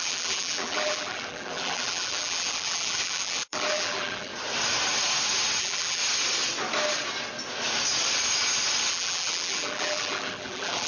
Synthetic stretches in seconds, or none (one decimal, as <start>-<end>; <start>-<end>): 0.0-4.3; 5.6-6.0; 8.9-10.9